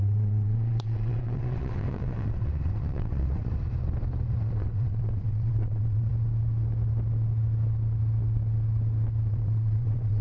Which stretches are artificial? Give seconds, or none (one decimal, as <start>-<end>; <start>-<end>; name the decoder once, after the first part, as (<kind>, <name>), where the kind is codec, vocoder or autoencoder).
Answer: 0.0-3.5 (vocoder, WaveNeXt); 4.4-6.1; 9.3-10.2